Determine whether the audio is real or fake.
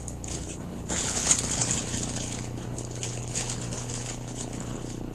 fake